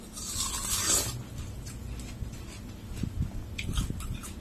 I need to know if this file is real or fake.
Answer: real